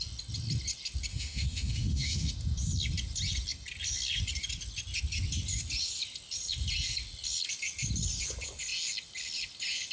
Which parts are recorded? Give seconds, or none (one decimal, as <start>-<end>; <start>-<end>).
0.0-1.1; 2.3-9.9